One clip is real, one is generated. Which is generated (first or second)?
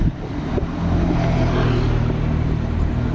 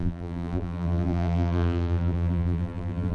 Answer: second